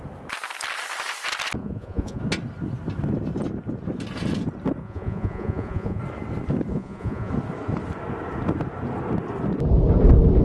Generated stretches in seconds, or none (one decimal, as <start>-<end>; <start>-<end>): 1.6-2.2; 4.8-6.0; 6.7-7.3